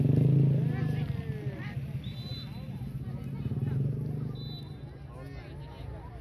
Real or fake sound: real